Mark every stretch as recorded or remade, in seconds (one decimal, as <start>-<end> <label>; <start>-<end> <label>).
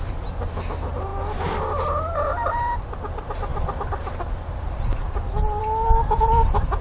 0.0-6.8 recorded